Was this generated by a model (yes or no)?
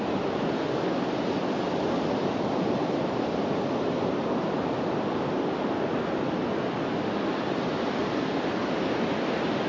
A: no